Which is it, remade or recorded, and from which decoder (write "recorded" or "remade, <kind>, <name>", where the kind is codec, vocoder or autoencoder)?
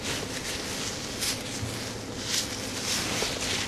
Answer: recorded